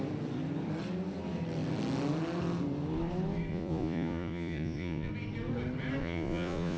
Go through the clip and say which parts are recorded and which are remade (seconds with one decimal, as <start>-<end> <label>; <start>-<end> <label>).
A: 0.0-3.5 recorded; 3.5-5.1 remade; 5.1-6.0 recorded; 6.0-6.8 remade